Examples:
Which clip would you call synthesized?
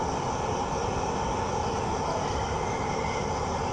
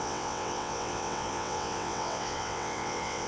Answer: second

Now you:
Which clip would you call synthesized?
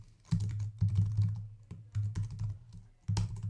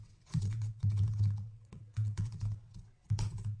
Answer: second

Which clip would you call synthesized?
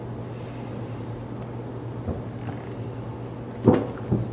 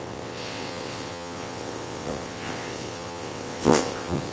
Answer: second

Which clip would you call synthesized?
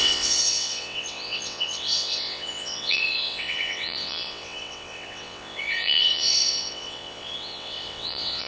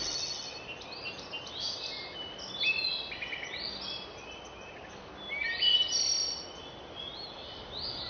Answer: first